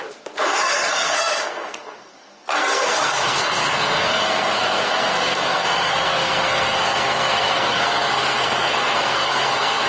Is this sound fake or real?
fake